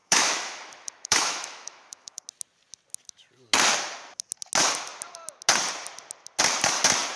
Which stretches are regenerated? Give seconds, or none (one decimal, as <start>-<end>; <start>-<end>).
0.0-2.2